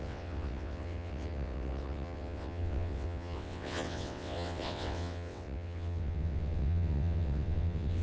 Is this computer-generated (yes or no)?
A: yes